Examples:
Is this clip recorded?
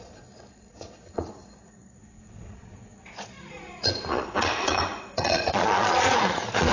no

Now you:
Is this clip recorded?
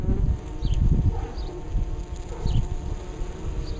yes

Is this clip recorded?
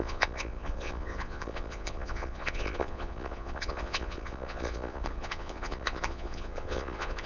no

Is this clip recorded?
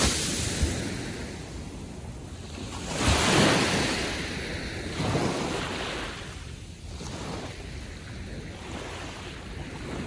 yes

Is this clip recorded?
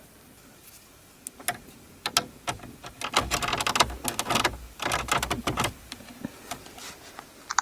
yes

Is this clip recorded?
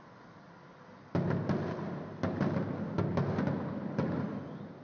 yes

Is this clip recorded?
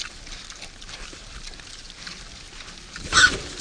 yes